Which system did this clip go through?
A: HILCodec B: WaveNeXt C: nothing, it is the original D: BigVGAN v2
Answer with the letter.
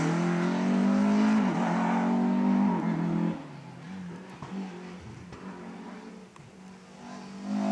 C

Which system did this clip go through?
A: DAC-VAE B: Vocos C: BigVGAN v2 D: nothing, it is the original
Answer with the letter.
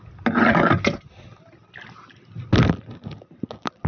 D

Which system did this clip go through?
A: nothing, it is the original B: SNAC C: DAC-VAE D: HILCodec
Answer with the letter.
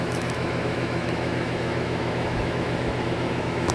C